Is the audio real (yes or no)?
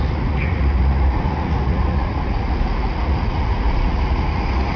no